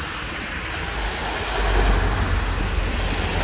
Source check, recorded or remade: recorded